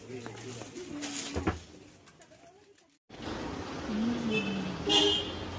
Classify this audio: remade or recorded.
recorded